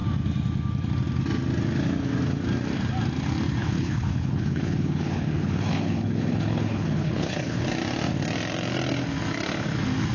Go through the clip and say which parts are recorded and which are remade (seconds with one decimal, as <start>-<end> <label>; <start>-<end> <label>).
0.0-3.6 recorded; 3.6-7.6 remade; 7.6-10.1 recorded